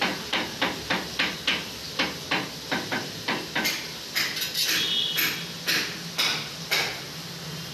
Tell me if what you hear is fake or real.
real